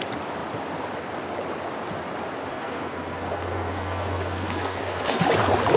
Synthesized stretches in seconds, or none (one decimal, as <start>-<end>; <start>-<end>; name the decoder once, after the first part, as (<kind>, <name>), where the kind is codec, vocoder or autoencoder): 2.5-5.2 (codec, SNAC)